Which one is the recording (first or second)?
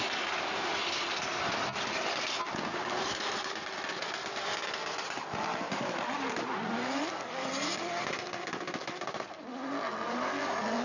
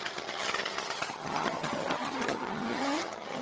first